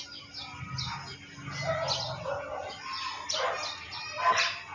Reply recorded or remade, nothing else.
recorded